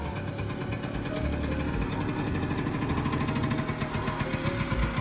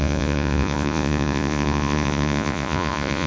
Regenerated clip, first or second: second